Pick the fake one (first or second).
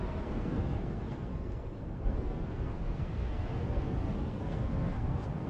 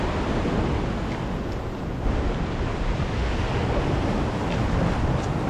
first